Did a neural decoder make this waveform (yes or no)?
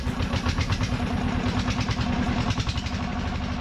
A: no